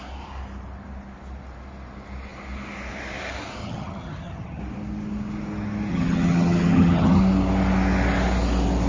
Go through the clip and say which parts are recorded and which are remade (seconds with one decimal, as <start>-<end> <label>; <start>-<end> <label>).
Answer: 0.0-3.6 recorded; 3.6-4.6 remade; 4.6-5.9 recorded; 5.9-7.2 remade; 7.2-8.9 recorded